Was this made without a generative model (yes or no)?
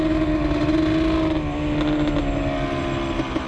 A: yes